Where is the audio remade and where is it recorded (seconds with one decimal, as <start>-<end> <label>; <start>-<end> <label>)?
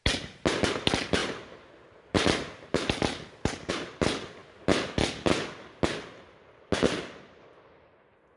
0.0-8.4 recorded